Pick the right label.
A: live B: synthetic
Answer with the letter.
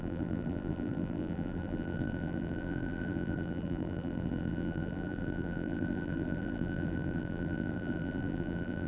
B